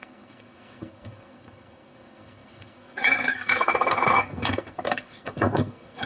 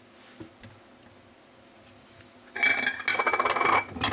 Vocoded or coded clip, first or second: first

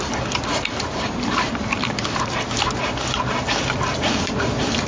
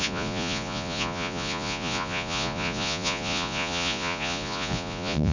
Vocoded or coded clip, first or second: second